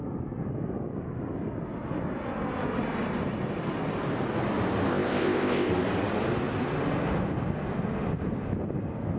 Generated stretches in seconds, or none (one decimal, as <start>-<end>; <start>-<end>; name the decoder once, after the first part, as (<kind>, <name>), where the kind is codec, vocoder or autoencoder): 4.9-5.7 (codec, ZipCodec)